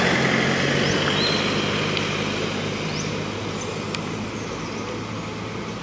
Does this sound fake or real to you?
real